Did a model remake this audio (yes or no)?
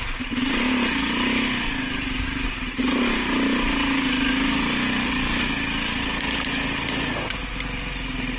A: no